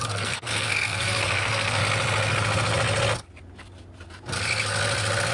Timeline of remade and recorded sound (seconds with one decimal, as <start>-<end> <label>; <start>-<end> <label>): 0.0-1.8 remade; 1.8-5.3 recorded

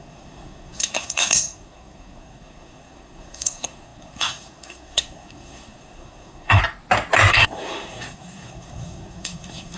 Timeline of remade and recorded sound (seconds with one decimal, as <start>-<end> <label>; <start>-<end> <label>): 0.0-6.6 remade; 6.6-7.3 recorded; 7.3-9.8 remade

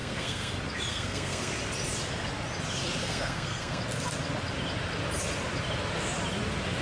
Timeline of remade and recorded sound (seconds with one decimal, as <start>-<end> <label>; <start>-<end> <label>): 0.0-0.5 remade; 0.5-0.9 recorded; 0.9-1.5 remade; 1.5-3.0 recorded; 3.0-3.8 remade; 3.8-6.8 recorded

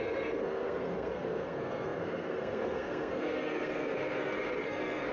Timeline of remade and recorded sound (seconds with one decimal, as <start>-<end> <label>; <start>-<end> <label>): 0.0-5.1 remade

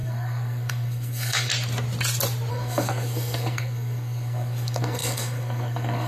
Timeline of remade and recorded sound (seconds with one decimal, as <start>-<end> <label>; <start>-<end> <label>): 0.0-1.5 remade; 1.5-2.5 recorded; 2.5-6.1 remade